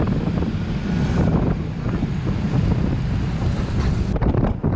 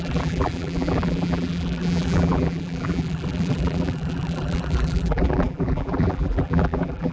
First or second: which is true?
first